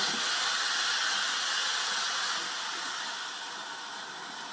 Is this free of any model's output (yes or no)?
yes